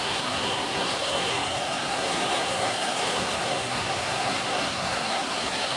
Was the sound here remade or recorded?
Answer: remade